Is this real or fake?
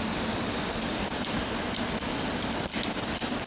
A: fake